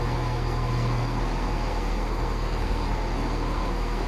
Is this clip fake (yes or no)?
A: yes